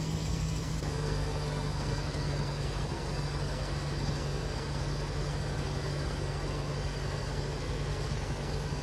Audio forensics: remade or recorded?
remade